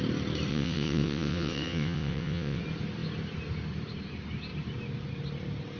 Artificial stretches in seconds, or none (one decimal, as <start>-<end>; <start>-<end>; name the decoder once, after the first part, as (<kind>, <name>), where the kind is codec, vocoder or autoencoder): 0.5-2.6 (vocoder, WaveNeXt)

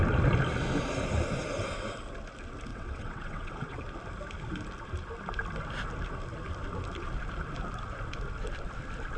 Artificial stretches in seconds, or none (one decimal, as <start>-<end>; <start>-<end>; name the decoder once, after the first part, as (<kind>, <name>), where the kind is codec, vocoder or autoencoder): 2.7-3.8 (vocoder, WaveNeXt)

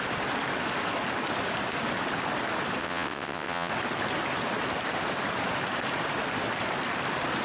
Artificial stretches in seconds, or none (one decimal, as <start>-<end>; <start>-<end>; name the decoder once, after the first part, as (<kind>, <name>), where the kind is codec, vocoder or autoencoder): 2.8-3.7 (vocoder, WaveNeXt)